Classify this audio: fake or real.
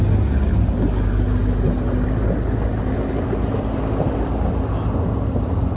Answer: real